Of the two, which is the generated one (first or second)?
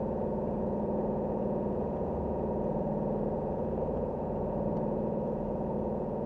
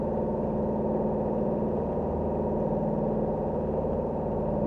first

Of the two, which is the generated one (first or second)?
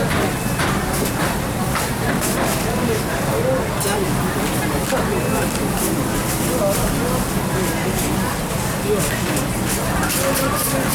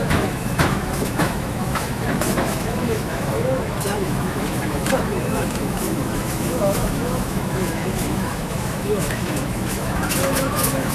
second